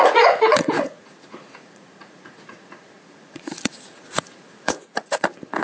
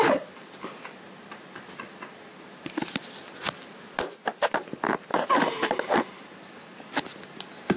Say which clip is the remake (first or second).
first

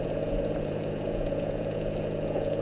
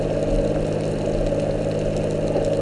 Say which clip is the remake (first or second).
first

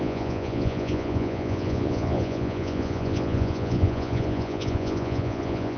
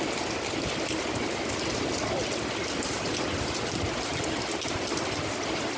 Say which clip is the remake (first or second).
first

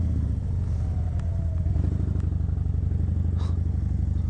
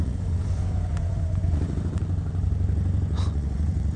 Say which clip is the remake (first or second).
second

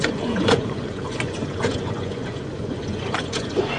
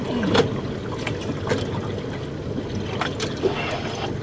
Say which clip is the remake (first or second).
first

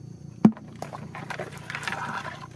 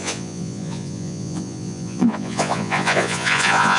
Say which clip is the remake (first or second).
second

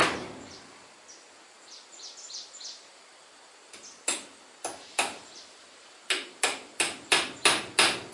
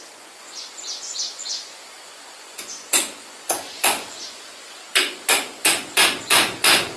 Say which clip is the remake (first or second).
second